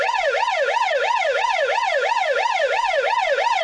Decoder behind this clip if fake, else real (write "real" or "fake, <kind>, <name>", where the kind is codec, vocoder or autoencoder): fake, vocoder, Vocos